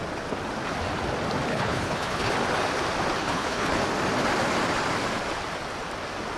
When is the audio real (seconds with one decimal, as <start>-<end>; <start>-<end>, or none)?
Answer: 0.0-1.5; 2.3-3.2; 3.8-6.4